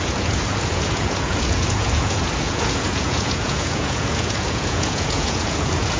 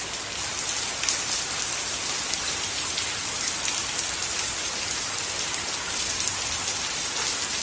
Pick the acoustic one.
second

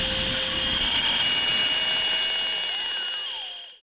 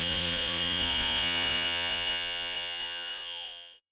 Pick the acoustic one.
first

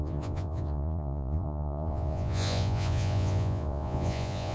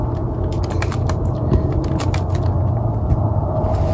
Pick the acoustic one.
second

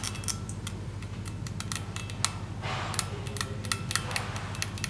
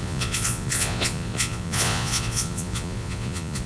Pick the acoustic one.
first